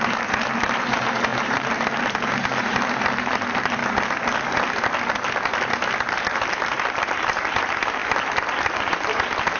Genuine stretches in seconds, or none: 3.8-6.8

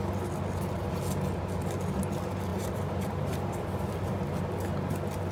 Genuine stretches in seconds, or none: 0.0-2.5; 4.2-5.3